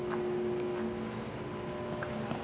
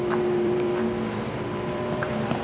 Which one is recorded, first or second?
first